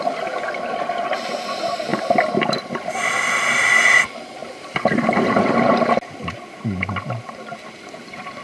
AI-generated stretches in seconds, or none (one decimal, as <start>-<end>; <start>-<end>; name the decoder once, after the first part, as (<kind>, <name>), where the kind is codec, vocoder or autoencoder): none